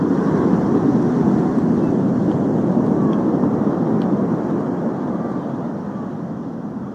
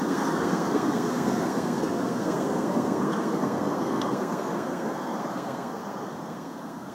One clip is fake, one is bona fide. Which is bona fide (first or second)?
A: first